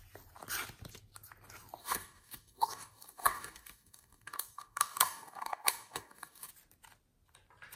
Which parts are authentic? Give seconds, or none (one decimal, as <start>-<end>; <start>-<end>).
0.0-1.8; 6.5-7.8

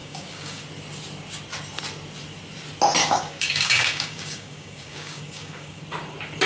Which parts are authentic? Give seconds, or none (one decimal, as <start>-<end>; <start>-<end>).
0.6-3.0; 5.8-6.5

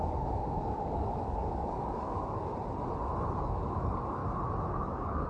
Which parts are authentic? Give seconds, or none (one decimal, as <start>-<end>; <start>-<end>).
2.5-3.4; 4.2-4.7